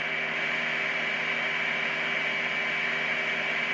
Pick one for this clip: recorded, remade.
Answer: recorded